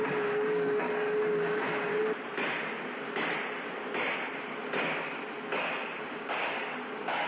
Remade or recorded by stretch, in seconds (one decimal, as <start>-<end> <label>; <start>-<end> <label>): 0.0-1.9 remade; 1.9-5.6 recorded; 5.6-7.3 remade